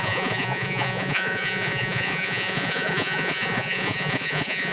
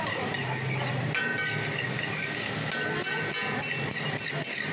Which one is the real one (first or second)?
second